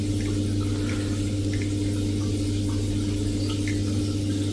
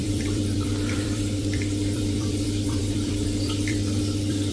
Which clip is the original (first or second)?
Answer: first